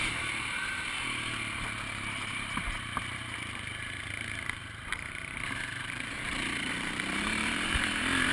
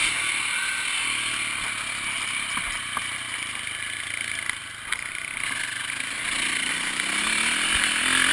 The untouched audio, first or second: second